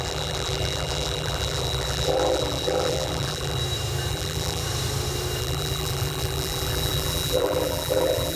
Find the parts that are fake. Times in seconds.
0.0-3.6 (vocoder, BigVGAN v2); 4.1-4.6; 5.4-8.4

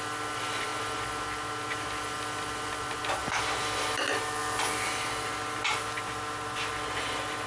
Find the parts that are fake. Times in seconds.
3.2-4.0 (vocoder, BigVGAN v2)

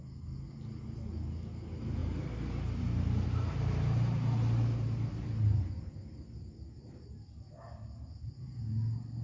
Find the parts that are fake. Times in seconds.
none

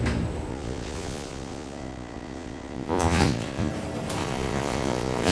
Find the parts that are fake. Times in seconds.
0.5-3.7 (vocoder, Vocos); 4.2-5.3

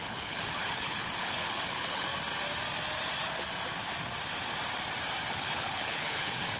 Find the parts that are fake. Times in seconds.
0.0-2.1 (codec, HILCodec); 5.3-6.6